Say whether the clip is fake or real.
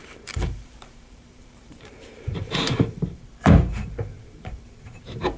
fake